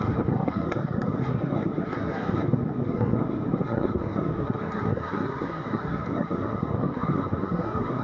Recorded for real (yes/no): no